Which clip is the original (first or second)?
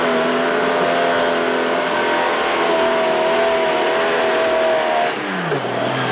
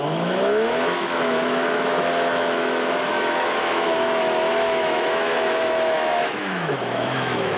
first